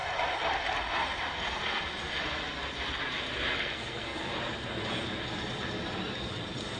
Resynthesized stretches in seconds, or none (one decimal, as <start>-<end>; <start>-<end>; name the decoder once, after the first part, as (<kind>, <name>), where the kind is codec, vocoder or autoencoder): 3.6-4.3 (codec, SNAC)